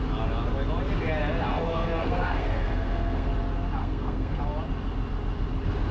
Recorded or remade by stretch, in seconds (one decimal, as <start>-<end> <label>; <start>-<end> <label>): 0.0-1.5 recorded; 1.5-3.3 remade; 3.3-3.8 recorded; 3.8-4.4 remade; 4.4-5.9 recorded